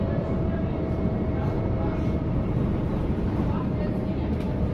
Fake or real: fake